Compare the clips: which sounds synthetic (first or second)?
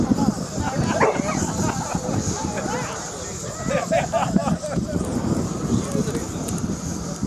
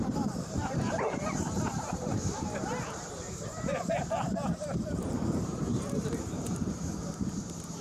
second